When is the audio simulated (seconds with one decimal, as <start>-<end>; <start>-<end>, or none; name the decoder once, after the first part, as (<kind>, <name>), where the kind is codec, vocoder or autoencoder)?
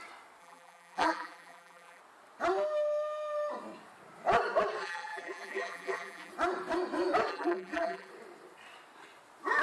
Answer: 0.4-2.0 (vocoder, BigVGAN v2); 4.8-6.3; 7.3-8.1